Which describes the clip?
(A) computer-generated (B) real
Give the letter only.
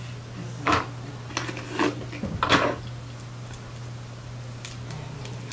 B